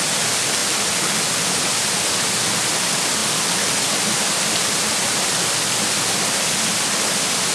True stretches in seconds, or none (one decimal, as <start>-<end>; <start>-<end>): 0.0-7.5